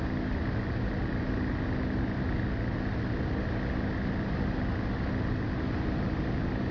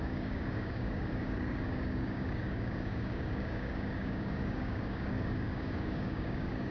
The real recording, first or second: first